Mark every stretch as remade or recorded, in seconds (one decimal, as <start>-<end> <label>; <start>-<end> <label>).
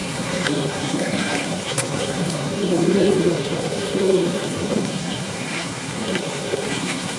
0.0-7.2 remade